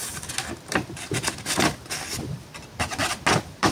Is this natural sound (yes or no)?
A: yes